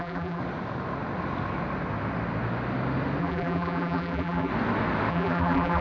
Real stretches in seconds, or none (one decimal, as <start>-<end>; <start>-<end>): 0.4-3.2; 4.5-5.1